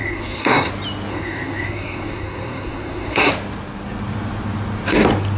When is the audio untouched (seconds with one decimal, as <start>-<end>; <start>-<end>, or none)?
0.7-1.1; 3.3-5.4